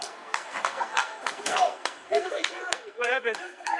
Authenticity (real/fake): fake